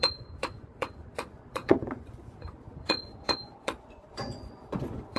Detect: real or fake fake